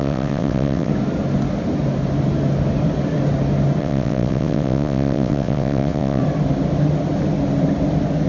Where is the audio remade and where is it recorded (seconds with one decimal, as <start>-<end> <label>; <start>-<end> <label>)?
0.0-0.9 remade; 0.9-3.8 recorded; 3.8-6.2 remade; 6.2-8.3 recorded